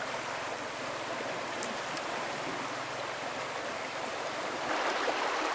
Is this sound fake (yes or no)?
no